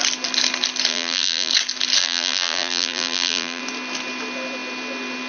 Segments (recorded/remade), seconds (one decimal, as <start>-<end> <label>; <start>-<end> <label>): 0.0-0.9 recorded; 0.9-1.5 remade; 1.5-2.0 recorded; 2.0-3.6 remade; 3.6-5.3 recorded